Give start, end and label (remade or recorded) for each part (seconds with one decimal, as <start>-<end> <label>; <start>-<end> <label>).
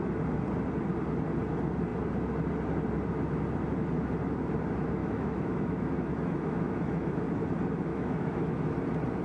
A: 0.0-5.0 recorded; 5.0-7.2 remade; 7.2-7.9 recorded; 7.9-8.7 remade; 8.7-9.2 recorded